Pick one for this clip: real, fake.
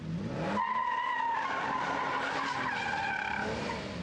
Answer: real